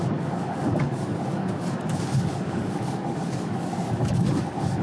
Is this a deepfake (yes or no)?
yes